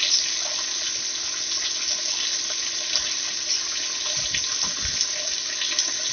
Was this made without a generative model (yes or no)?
yes